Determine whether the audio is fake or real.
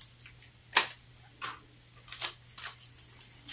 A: real